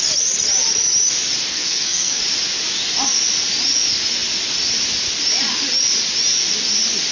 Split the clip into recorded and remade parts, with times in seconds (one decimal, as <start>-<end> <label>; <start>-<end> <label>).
0.0-1.5 recorded; 1.5-2.2 remade; 2.2-7.1 recorded